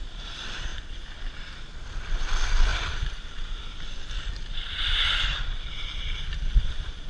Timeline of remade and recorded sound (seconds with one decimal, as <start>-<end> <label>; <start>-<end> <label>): 0.0-0.7 recorded; 0.7-1.7 remade; 1.7-2.7 recorded; 2.7-3.6 remade; 3.6-4.6 recorded; 4.6-7.1 remade